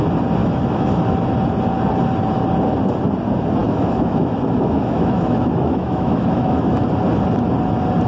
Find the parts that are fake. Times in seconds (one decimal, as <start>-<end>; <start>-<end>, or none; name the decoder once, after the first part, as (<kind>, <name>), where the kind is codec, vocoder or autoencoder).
0.4-1.0 (autoencoder, DAC-VAE); 3.6-6.8